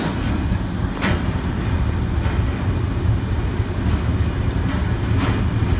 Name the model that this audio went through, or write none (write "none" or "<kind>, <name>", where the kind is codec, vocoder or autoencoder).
none